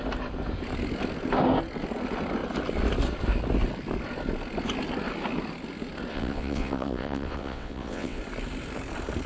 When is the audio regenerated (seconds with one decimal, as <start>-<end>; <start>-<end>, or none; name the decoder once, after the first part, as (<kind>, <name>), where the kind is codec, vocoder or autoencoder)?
6.1-8.2 (vocoder, WaveNeXt)